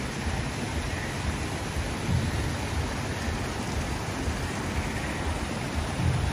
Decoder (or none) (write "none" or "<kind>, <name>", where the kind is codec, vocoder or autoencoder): none